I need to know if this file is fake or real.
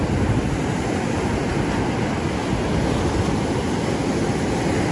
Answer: real